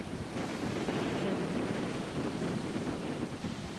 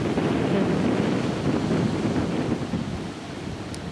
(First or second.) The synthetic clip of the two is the first